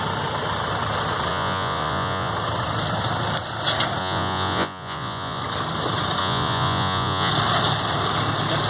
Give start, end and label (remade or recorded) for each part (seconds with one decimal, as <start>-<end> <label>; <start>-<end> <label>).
0.0-1.3 recorded; 1.3-2.3 remade; 2.3-4.0 recorded; 4.0-5.4 remade; 5.4-6.2 recorded; 6.2-7.3 remade; 7.3-8.7 recorded